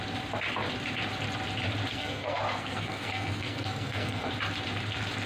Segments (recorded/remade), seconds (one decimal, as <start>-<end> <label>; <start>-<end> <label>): 0.0-1.9 recorded; 1.9-4.3 remade; 4.3-5.3 recorded